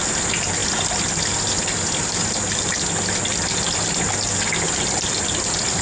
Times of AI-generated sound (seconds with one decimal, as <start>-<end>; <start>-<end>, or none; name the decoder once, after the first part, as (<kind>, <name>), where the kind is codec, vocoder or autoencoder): none